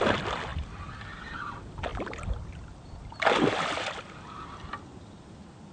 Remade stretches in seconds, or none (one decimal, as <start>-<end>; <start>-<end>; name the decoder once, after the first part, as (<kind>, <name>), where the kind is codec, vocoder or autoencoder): none